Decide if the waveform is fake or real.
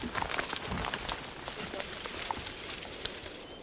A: real